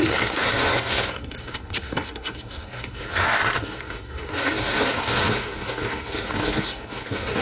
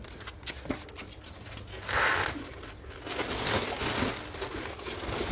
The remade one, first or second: first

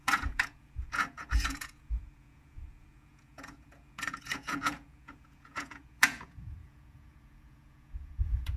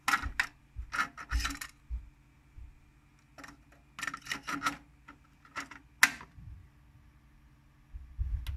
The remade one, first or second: first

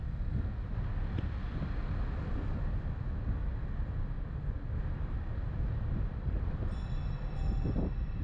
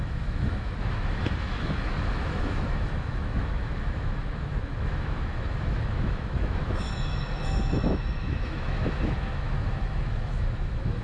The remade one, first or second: second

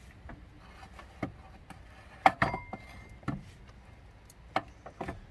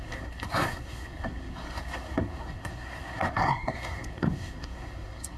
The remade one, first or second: second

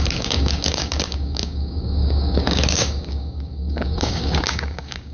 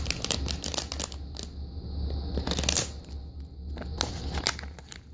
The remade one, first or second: first